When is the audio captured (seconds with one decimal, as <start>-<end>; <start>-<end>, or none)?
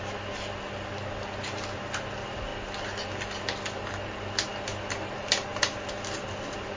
0.0-6.8